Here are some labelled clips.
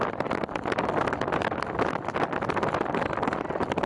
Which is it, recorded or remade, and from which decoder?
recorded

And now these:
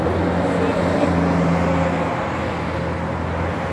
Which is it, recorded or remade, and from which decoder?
recorded